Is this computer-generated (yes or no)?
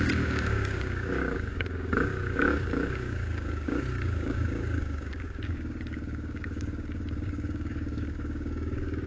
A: yes